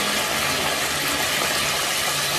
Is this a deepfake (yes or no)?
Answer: no